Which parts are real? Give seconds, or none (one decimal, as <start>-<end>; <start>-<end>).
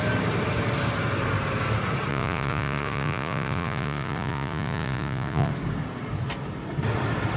0.0-2.1; 5.5-7.4